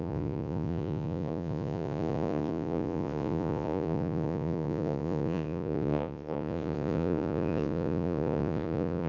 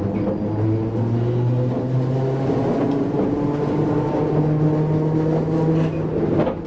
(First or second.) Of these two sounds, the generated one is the first